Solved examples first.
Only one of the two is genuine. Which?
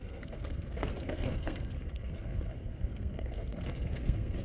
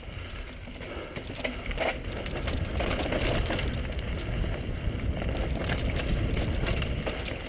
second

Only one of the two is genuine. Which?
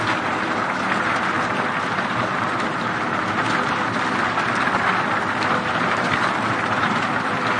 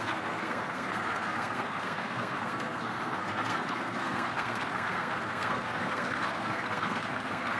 first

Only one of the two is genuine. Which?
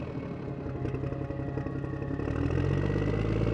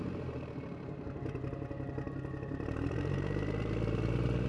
first